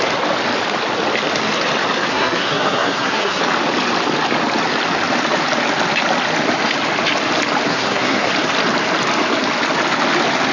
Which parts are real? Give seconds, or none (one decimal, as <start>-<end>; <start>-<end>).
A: 0.0-2.1; 3.4-7.7; 8.3-10.5